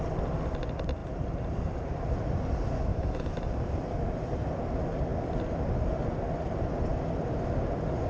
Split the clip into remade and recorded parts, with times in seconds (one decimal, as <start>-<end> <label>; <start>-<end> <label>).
0.0-2.9 recorded; 2.9-3.5 remade; 3.5-8.1 recorded